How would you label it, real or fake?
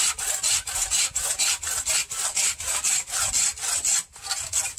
real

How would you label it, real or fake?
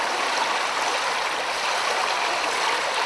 real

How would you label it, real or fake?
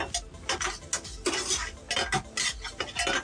real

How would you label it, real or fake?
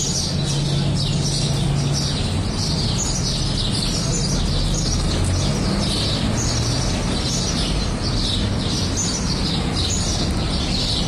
real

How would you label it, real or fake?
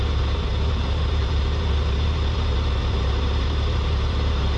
fake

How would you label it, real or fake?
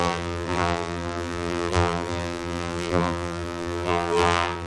fake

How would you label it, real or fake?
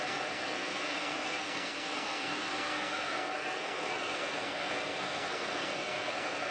fake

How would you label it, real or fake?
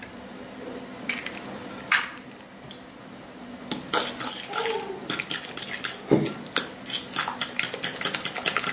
real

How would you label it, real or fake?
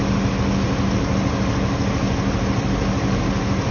real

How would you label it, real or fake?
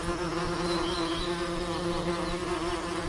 real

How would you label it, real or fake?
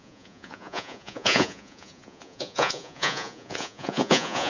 fake